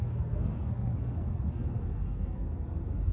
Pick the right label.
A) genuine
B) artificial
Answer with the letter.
B